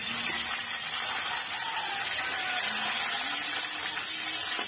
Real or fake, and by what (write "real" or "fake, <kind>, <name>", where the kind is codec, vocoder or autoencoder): real